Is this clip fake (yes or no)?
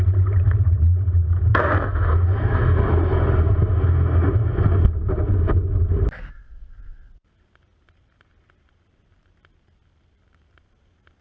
no